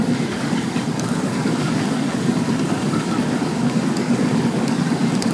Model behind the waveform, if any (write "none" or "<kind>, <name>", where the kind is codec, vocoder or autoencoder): codec, DAC